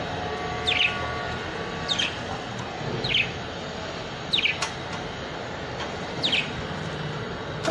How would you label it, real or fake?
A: real